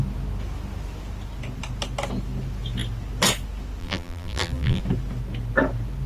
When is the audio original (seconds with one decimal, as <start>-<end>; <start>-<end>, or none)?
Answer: 0.0-3.8; 4.8-6.1